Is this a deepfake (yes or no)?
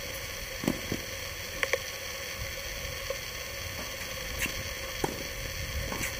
no